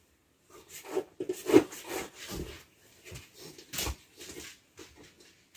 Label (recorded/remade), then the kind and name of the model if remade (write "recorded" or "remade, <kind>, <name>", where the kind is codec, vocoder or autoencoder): recorded